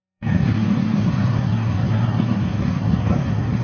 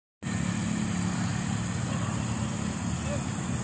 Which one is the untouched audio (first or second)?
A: second